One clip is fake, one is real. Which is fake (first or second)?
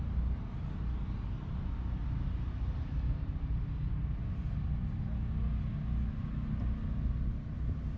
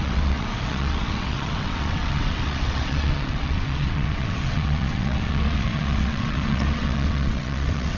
second